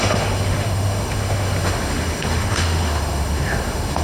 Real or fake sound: fake